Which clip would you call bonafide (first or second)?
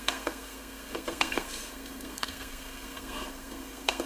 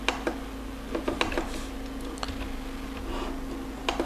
second